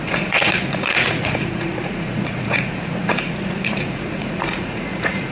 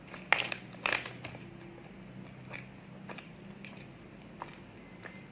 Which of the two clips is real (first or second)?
second